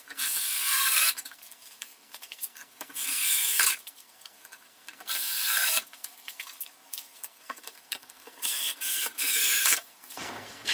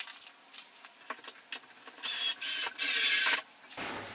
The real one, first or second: second